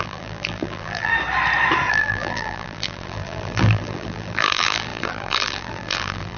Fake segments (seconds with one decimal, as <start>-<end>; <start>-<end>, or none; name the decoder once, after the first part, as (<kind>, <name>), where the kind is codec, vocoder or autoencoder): 0.0-1.1 (vocoder, BigVGAN v2); 1.9-6.4